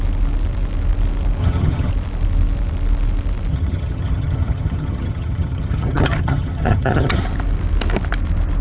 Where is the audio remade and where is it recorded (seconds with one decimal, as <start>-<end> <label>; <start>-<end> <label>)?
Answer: 0.0-1.4 recorded; 1.4-1.9 remade; 1.9-3.5 recorded; 3.5-7.2 remade; 7.2-8.6 recorded